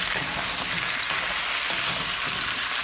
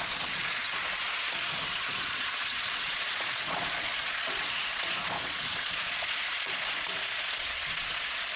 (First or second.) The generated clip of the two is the second